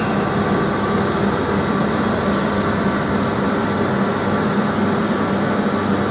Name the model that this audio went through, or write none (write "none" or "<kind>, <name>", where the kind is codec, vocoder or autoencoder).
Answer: none